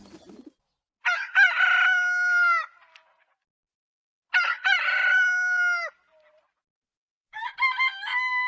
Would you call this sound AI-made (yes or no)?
no